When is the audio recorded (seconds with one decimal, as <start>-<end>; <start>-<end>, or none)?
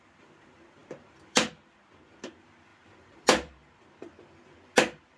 0.0-0.8; 1.5-2.7; 3.8-5.2